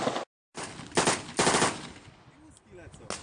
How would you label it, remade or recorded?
recorded